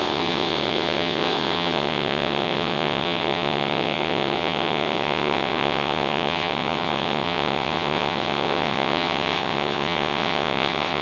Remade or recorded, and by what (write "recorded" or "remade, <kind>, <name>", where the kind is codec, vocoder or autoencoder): remade, vocoder, WaveNeXt